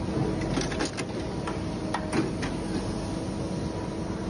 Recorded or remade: recorded